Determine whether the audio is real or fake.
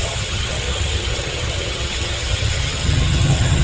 fake